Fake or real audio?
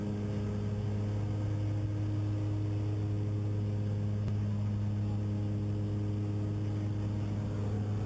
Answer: real